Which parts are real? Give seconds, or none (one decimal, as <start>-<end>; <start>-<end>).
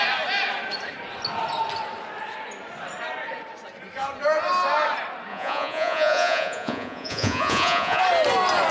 0.0-5.3; 8.0-8.7